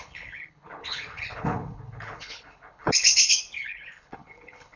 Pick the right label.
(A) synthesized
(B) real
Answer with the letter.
A